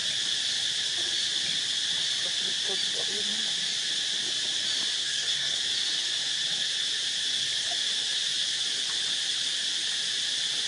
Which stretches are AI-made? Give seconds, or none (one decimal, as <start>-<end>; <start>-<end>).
5.0-5.6